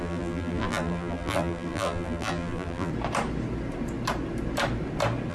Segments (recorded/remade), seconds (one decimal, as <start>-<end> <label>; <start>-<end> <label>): 0.0-2.9 remade; 2.9-5.3 recorded